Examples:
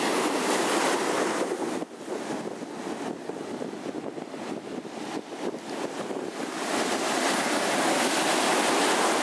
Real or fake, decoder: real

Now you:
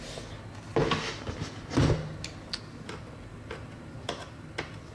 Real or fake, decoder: real